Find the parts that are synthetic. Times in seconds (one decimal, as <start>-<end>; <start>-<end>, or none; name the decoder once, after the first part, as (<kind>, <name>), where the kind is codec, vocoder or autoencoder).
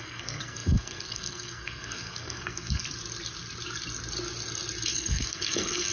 0.0-2.8 (codec, SNAC); 4.9-5.9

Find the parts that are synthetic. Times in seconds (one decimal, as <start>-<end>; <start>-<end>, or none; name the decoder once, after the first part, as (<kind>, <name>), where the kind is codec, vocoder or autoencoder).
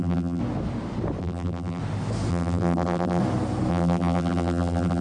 0.0-0.4 (vocoder, BigVGAN v2); 1.2-1.8; 2.3-3.2; 3.7-5.0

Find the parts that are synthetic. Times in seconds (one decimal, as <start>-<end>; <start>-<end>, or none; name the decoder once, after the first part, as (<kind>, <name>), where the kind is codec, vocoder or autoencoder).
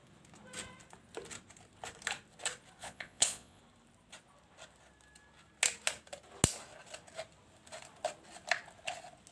2.8-3.6 (vocoder, Vocos)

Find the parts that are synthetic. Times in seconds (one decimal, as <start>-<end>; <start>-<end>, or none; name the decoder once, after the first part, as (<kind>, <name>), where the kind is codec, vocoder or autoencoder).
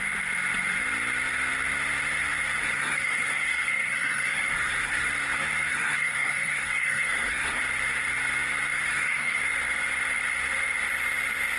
2.6-5.1 (codec, SNAC); 5.7-7.6; 8.9-9.4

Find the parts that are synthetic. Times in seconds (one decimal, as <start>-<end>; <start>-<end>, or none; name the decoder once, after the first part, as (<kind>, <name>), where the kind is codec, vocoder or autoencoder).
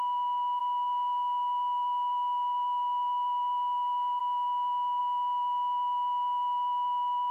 0.6-4.2 (autoencoder, DAC-VAE)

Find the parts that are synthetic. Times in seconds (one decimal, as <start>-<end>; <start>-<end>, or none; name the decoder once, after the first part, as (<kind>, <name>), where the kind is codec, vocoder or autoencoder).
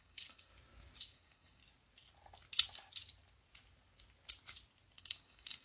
0.0-0.5 (codec, DAC); 1.0-1.6; 5.0-5.6